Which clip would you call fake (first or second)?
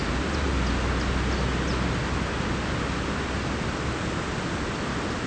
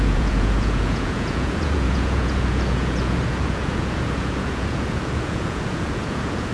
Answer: second